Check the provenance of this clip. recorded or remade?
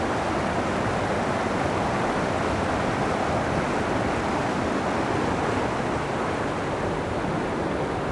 recorded